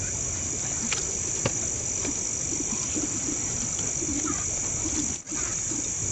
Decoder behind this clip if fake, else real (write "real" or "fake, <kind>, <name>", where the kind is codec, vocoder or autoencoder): real